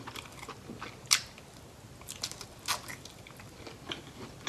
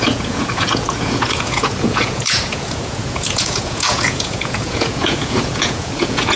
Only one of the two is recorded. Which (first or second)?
first